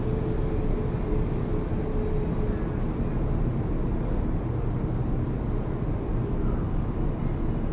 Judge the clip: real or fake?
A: real